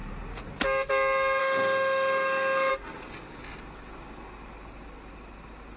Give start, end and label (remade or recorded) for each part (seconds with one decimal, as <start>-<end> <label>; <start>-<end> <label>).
0.0-1.4 recorded; 1.4-2.7 remade; 2.7-5.8 recorded